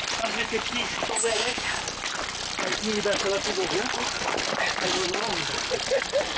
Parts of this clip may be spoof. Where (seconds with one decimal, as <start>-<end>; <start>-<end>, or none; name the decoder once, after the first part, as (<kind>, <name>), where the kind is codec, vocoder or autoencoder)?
1.2-1.8 (codec, DAC)

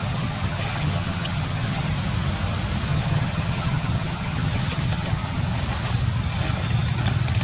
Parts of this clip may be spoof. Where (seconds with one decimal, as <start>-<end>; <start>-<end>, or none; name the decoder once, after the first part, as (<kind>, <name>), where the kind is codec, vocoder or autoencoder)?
0.0-1.9 (vocoder, HiFi-GAN); 2.9-5.4